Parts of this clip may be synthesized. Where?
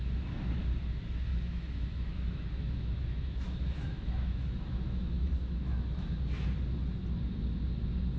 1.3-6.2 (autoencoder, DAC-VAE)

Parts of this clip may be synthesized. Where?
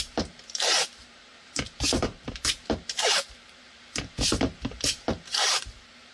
0.0-6.1 (vocoder, BigVGAN v2)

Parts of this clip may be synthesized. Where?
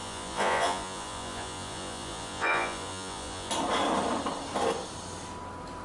0.0-3.5 (vocoder, Vocos)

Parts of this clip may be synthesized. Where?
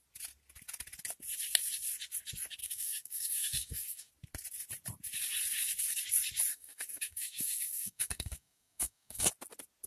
2.6-4.1 (codec, DAC); 6.5-9.3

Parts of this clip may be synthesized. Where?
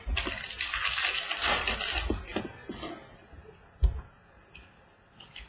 none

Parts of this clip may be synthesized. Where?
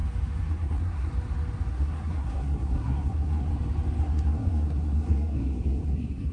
0.5-1.1 (codec, SNAC); 1.7-3.5; 4.0-6.3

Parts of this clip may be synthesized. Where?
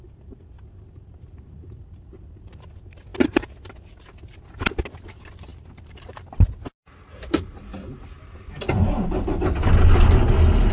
none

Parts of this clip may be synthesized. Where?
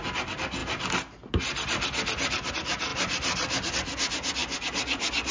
none